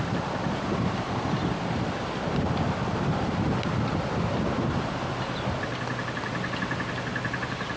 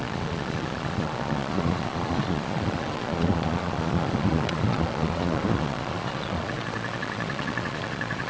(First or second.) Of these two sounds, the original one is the first